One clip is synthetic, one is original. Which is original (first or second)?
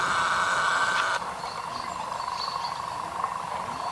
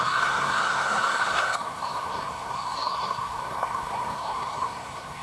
first